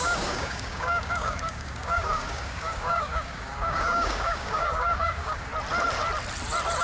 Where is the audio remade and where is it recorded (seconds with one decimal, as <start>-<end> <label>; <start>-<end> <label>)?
0.0-5.5 remade; 5.5-6.8 recorded

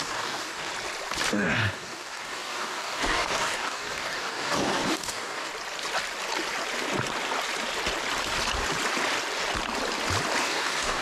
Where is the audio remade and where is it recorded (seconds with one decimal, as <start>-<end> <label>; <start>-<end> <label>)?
0.0-0.7 remade; 0.7-1.3 recorded; 1.3-5.5 remade; 5.5-10.4 recorded; 10.4-11.0 remade

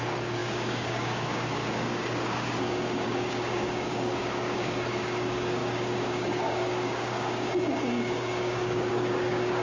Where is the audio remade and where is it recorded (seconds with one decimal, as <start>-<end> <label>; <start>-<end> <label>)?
0.0-9.6 remade

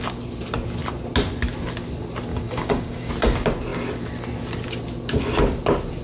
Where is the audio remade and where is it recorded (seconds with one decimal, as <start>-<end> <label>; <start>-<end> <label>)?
0.0-2.3 recorded; 2.3-3.1 remade; 3.1-6.0 recorded